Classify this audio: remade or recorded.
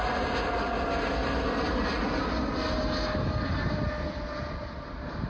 recorded